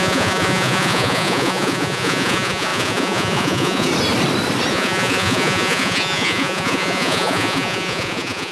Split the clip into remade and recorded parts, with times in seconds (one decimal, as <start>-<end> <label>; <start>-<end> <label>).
0.0-3.9 remade; 3.9-4.7 recorded; 4.7-8.5 remade